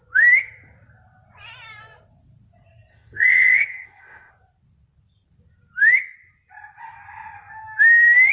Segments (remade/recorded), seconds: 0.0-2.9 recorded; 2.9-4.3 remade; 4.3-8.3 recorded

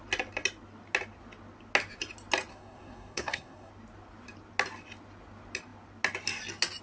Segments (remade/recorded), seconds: 0.0-2.5 recorded; 2.5-3.7 remade; 3.7-6.8 recorded

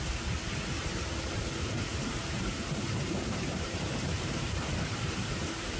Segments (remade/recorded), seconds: 0.0-1.9 recorded; 1.9-5.2 remade; 5.2-5.8 recorded